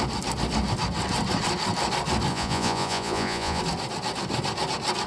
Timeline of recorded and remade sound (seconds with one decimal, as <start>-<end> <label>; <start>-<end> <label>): 0.0-2.3 recorded; 2.3-3.6 remade; 3.6-5.1 recorded